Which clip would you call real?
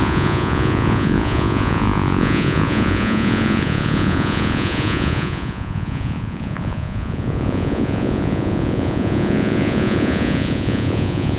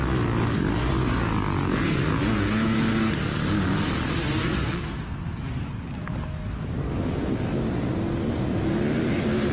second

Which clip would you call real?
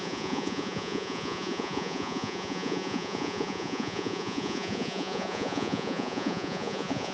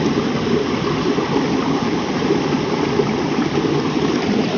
second